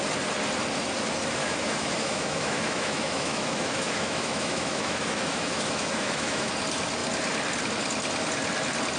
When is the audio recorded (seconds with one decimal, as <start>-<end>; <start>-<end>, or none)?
0.0-1.4; 6.5-9.0